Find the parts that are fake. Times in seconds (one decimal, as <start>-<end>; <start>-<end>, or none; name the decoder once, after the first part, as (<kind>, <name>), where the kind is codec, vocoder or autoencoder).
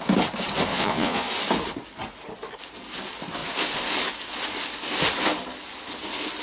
0.7-1.3 (vocoder, Vocos)